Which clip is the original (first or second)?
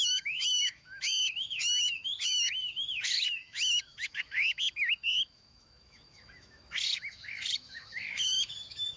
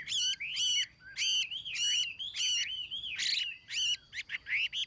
second